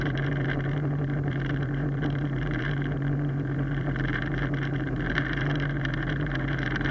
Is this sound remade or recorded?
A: remade